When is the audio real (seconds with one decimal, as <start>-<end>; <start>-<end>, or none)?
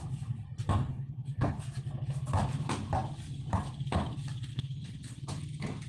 0.0-0.9; 1.6-4.5; 5.3-5.9